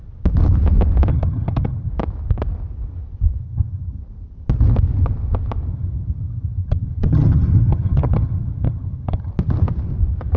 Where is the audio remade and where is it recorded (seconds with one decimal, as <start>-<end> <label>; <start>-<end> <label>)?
0.0-1.1 recorded; 1.1-1.9 remade; 1.9-3.4 recorded; 3.4-4.0 remade; 4.0-5.7 recorded; 5.7-9.3 remade; 9.3-10.4 recorded